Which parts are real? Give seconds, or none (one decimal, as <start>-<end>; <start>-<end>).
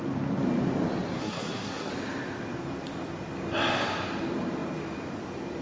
0.0-1.2; 1.9-5.6